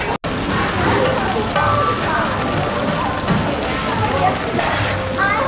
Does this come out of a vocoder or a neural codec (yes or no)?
no